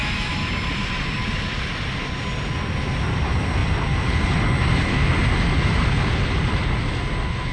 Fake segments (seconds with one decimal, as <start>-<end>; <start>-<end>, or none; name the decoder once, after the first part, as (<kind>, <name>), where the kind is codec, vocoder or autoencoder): 0.0-0.5 (autoencoder, DAC-VAE)